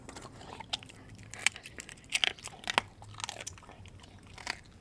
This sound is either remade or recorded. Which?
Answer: recorded